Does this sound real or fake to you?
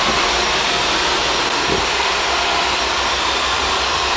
real